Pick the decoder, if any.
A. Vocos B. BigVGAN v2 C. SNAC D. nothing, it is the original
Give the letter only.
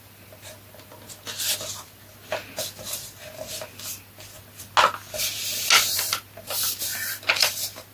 D